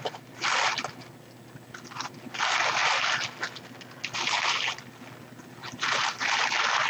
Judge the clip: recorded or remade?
recorded